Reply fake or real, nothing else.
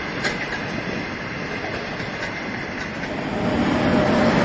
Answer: real